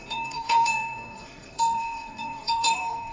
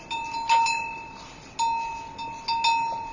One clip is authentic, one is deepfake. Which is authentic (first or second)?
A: second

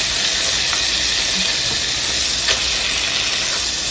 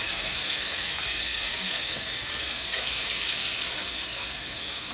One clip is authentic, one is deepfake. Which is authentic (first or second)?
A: first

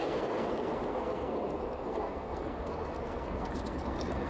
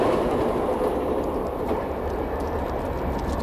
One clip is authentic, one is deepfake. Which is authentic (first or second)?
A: second